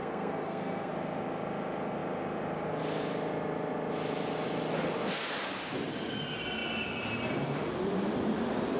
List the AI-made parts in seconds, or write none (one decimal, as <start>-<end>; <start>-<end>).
0.0-0.9